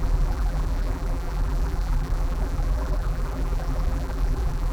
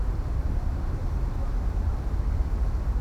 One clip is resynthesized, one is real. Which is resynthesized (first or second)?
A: first